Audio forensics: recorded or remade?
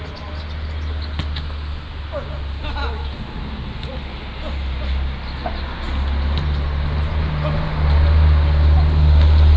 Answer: recorded